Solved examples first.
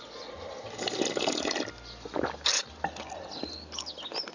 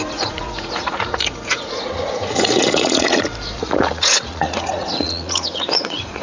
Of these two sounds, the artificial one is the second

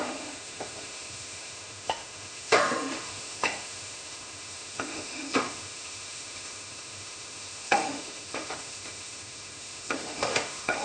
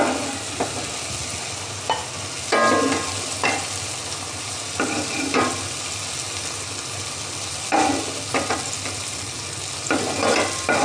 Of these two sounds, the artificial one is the first